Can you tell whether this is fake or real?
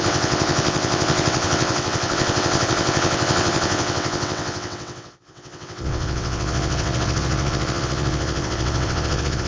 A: fake